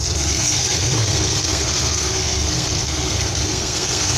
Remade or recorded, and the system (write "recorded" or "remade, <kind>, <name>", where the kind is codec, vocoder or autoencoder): remade, codec, SNAC